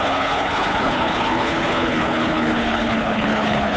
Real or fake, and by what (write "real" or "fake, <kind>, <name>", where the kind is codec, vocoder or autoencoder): fake, codec, HILCodec